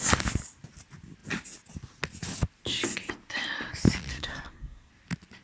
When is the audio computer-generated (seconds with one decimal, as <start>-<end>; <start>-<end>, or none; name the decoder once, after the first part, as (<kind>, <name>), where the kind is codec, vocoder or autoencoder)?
4.1-4.9 (codec, SNAC)